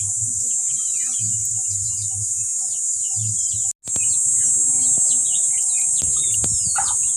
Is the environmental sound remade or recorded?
recorded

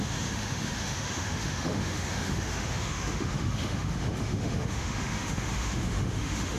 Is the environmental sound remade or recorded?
remade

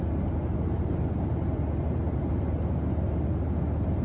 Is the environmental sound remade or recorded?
recorded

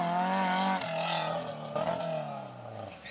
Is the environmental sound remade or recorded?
recorded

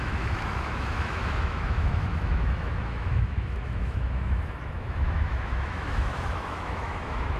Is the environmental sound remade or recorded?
remade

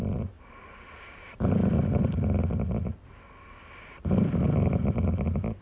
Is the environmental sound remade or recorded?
recorded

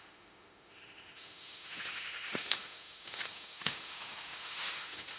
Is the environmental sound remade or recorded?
remade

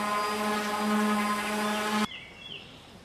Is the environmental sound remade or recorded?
recorded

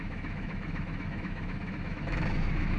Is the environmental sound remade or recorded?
remade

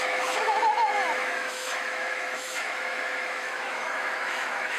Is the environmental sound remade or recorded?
remade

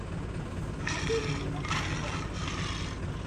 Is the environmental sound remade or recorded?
recorded